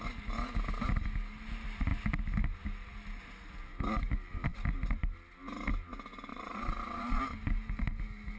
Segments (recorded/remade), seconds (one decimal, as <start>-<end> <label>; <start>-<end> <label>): 0.0-6.3 recorded; 6.3-7.2 remade; 7.2-8.4 recorded